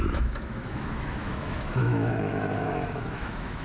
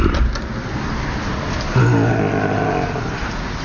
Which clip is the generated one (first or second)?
first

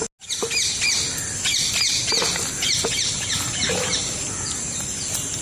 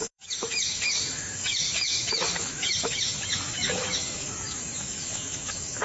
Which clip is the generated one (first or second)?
second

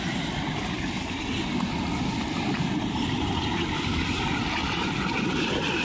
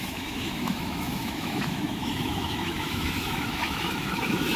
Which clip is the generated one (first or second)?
second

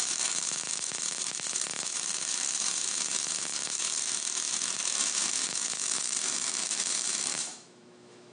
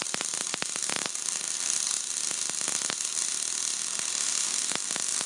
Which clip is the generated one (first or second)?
first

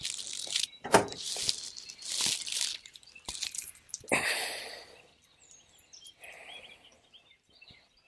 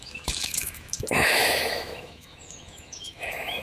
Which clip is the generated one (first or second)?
second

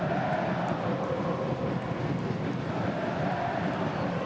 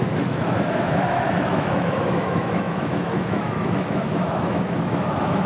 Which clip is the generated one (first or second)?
second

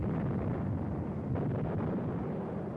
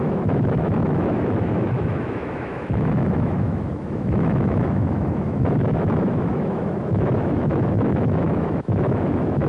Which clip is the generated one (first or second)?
second